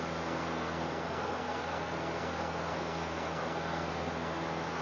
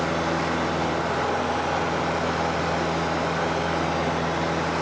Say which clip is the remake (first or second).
first